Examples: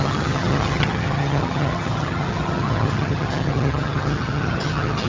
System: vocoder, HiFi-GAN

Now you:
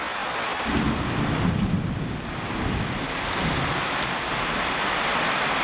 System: none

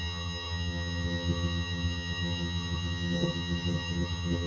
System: vocoder, HiFi-GAN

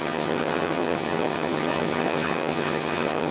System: vocoder, HiFi-GAN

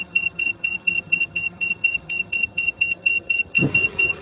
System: vocoder, HiFi-GAN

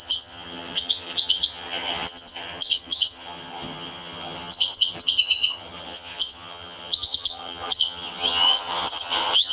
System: vocoder, HiFi-GAN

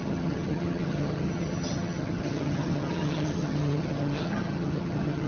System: vocoder, HiFi-GAN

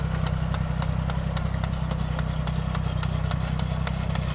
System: none